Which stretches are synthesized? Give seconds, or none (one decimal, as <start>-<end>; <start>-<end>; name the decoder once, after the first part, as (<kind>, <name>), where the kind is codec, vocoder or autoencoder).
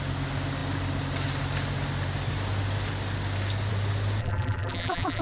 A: 4.2-5.2 (vocoder, BigVGAN v2)